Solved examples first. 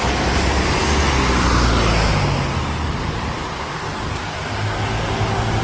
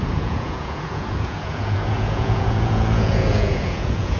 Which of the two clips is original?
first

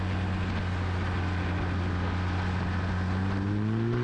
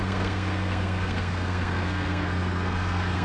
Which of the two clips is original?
first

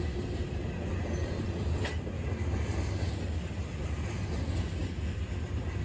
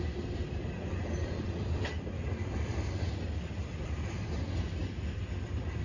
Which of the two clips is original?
first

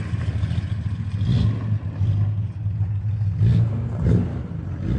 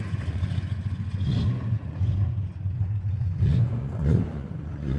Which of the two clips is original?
first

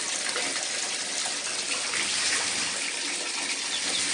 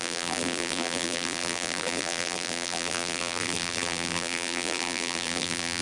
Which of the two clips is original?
first